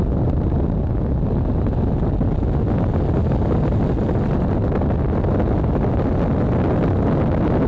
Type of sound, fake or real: real